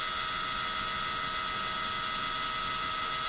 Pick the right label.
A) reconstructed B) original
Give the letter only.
B